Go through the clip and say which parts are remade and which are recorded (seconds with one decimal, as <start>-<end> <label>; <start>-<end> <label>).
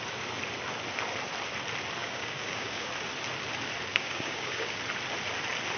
0.0-2.0 recorded; 2.0-2.9 remade; 2.9-3.9 recorded; 3.9-4.8 remade; 4.8-5.8 recorded